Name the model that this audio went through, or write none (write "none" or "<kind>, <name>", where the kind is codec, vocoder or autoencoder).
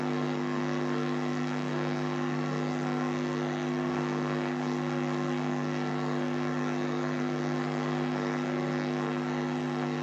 codec, SNAC